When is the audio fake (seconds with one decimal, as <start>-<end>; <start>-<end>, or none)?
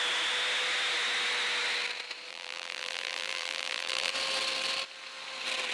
2.3-4.1